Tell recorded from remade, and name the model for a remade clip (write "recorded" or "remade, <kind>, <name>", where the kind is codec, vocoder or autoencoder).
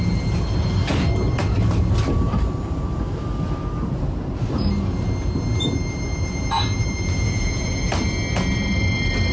recorded